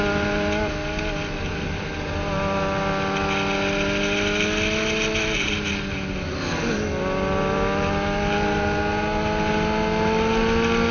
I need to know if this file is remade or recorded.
recorded